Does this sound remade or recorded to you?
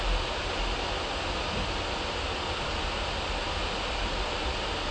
recorded